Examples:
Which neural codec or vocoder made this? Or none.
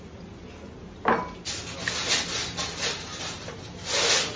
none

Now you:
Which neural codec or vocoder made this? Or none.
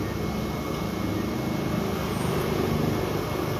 none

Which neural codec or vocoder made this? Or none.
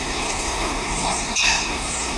codec, SNAC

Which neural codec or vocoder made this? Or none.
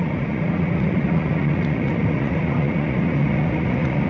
vocoder, Vocos